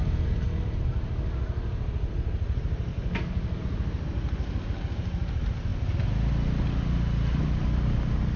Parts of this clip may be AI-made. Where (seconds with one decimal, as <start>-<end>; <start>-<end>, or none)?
2.9-3.6